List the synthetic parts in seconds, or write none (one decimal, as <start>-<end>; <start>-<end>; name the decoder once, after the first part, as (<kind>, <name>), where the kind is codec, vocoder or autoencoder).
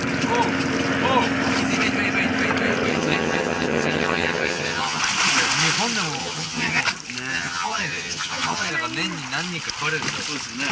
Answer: 2.9-5.0 (vocoder, HiFi-GAN); 6.2-6.8; 7.3-8.7